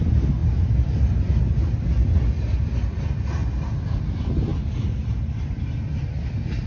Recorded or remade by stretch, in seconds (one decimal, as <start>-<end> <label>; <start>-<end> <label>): 0.0-6.7 recorded